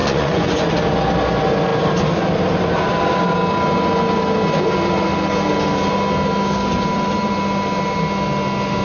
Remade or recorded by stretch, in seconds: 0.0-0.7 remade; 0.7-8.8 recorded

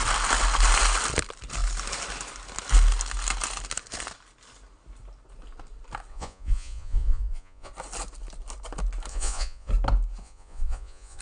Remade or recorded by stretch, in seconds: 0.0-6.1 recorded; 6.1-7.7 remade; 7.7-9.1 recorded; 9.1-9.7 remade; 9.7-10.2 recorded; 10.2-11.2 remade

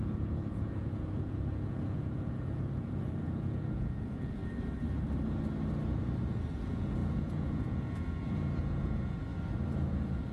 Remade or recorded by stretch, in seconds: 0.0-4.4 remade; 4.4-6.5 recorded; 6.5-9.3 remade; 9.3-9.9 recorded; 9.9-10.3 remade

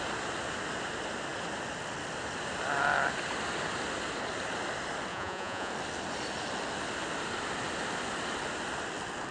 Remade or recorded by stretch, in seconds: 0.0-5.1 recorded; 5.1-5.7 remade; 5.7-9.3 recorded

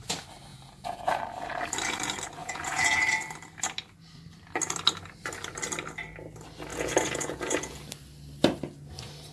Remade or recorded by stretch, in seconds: 0.0-0.5 recorded; 0.5-1.2 remade; 1.2-2.4 recorded; 2.4-3.0 remade; 3.0-6.7 recorded; 6.7-7.8 remade; 7.8-9.3 recorded

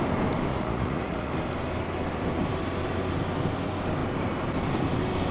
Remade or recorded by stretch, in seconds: 0.0-0.5 recorded; 0.5-1.3 remade; 1.3-5.3 recorded

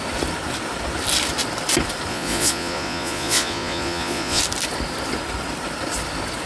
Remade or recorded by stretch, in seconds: 0.0-2.1 recorded; 2.1-4.4 remade; 4.4-6.5 recorded

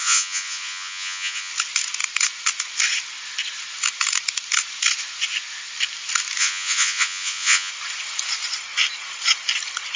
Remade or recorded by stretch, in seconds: 0.0-1.5 remade; 1.5-6.4 recorded; 6.4-7.7 remade; 7.7-10.0 recorded